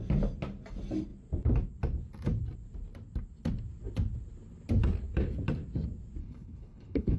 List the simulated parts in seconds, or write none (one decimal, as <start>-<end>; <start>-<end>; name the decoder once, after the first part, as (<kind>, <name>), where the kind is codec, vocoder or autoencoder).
6.2-7.2 (codec, HILCodec)